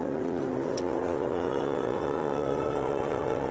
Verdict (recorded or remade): remade